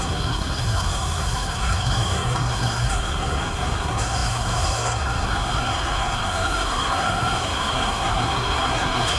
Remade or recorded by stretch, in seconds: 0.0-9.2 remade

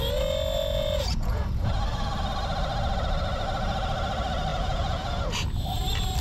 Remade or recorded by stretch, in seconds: 0.0-0.6 recorded; 0.6-1.7 remade; 1.7-4.5 recorded; 4.5-5.2 remade; 5.2-6.2 recorded

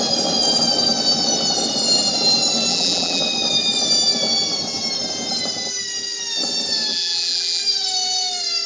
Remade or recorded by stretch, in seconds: 0.0-2.7 recorded; 2.7-3.2 remade; 3.2-6.9 recorded; 6.9-7.6 remade; 7.6-8.7 recorded

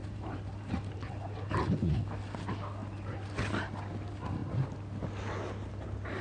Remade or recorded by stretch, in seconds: 0.0-0.7 remade; 0.7-6.2 recorded